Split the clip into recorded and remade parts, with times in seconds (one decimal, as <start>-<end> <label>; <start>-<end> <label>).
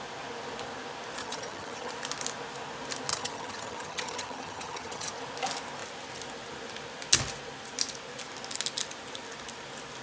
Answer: 0.0-1.2 recorded; 1.2-1.9 remade; 1.9-3.1 recorded; 3.1-5.1 remade; 5.1-10.0 recorded